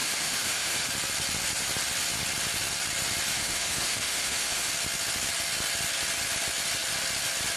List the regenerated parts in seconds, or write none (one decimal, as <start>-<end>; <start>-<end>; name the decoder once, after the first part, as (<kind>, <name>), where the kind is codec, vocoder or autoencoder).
0.0-0.9 (autoencoder, DAC-VAE); 3.3-4.7